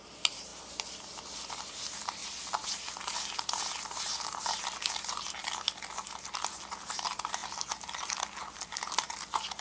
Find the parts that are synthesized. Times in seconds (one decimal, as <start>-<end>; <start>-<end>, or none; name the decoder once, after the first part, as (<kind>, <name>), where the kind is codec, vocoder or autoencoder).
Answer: 0.0-0.5 (vocoder, BigVGAN v2); 1.6-2.2; 5.0-5.4; 6.7-7.4; 8.4-9.6